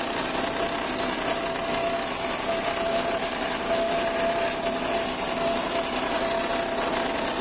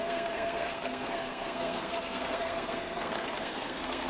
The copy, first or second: second